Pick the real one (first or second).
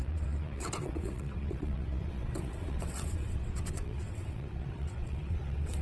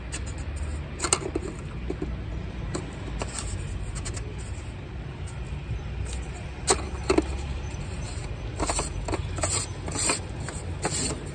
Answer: second